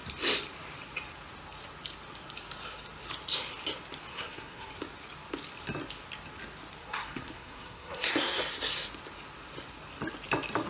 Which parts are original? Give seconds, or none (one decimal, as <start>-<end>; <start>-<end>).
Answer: 0.0-4.1; 4.7-6.8; 8.4-10.7